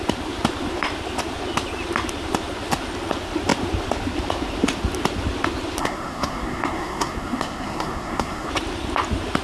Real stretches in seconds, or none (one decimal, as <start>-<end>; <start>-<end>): 0.0-5.8; 8.5-9.4